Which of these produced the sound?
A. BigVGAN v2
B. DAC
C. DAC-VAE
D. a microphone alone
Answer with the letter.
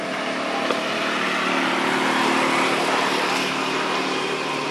D